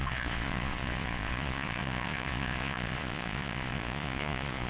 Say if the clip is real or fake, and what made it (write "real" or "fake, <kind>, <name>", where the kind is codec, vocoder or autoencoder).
fake, vocoder, Vocos